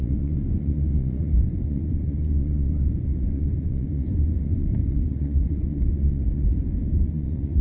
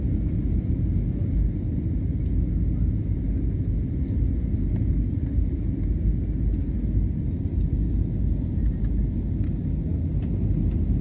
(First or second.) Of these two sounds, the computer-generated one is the first